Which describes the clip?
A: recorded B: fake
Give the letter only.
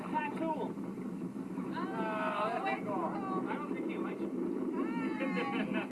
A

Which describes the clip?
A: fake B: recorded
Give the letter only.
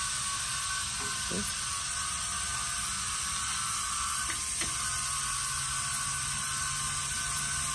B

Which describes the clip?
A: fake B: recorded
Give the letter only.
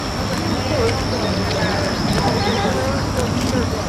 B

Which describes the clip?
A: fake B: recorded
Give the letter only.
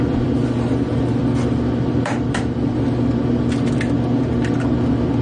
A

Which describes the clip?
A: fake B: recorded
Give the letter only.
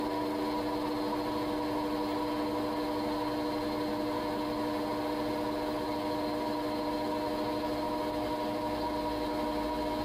B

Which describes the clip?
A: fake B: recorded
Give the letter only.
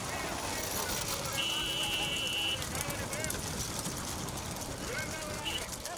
B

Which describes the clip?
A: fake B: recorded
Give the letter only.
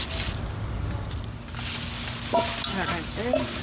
B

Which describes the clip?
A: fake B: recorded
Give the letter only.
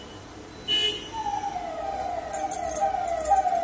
B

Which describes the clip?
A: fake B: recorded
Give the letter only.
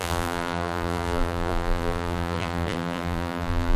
A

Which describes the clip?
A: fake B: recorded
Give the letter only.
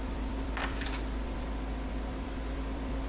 A